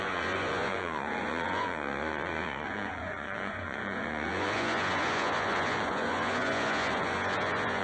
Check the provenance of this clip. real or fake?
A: fake